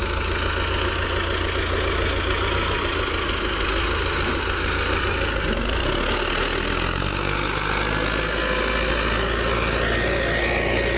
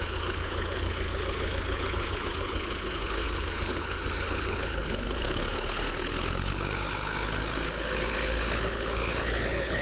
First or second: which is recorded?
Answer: first